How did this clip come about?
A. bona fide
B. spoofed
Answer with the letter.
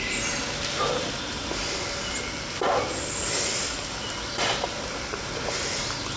A